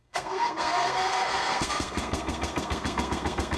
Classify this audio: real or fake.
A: fake